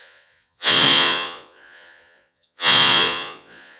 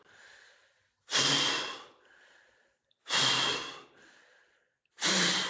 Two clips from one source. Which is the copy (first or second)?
first